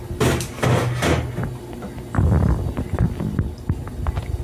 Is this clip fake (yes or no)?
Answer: no